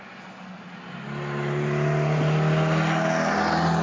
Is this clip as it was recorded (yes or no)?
yes